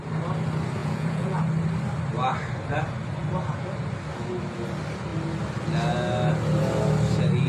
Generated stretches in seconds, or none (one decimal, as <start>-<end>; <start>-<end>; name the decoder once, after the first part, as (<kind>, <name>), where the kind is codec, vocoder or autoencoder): 0.8-1.4 (vocoder, Vocos)